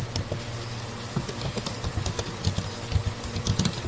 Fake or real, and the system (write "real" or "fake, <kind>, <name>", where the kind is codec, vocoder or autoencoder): real